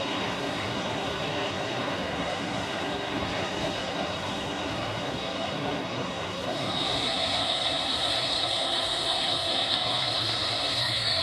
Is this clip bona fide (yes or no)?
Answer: no